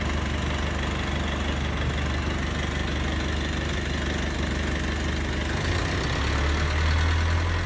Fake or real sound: real